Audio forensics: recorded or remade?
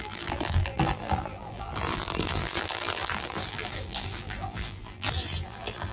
remade